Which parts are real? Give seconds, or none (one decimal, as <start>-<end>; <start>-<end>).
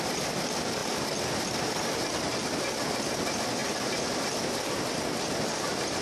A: 0.0-3.6; 5.0-6.0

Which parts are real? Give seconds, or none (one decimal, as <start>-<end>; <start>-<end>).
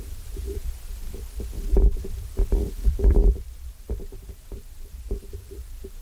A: 0.6-4.2